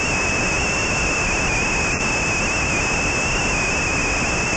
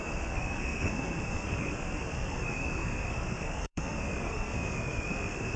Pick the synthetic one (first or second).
second